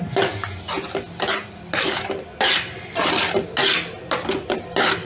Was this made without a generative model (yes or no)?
yes